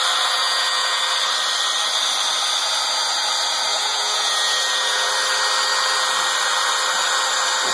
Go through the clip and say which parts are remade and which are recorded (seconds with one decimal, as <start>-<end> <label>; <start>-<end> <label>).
0.0-0.4 recorded; 0.4-1.0 remade; 1.0-3.7 recorded; 3.7-5.1 remade; 5.1-7.7 recorded